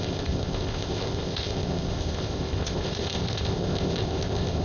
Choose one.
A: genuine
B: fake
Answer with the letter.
B